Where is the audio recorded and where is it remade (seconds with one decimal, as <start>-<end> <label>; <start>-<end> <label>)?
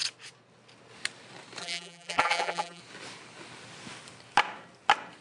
0.0-1.6 recorded; 1.6-2.8 remade; 2.8-5.2 recorded